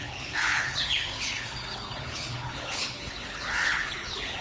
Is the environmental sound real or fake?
fake